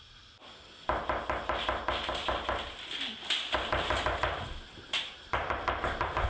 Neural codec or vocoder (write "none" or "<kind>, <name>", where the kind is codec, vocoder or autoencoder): none